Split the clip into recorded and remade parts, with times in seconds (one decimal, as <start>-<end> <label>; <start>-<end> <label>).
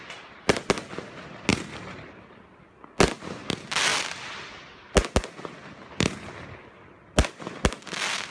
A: 0.0-8.3 recorded